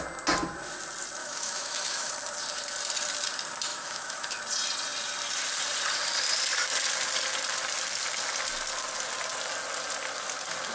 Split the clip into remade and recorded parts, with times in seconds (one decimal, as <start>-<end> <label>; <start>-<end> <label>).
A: 0.0-1.2 recorded; 1.2-2.1 remade; 2.1-3.7 recorded; 3.7-4.3 remade; 4.3-10.7 recorded